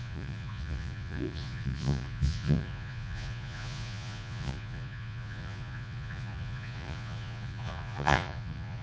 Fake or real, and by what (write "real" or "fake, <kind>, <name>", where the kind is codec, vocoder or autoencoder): fake, vocoder, Vocos